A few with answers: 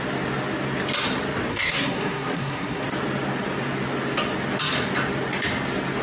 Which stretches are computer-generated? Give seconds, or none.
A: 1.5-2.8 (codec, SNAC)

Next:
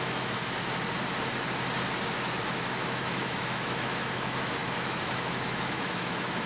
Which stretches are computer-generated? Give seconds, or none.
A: 0.0-0.4 (autoencoder, DAC-VAE); 2.5-6.5